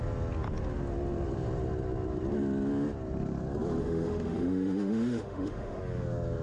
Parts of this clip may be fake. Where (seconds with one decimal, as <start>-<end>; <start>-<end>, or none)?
3.8-5.8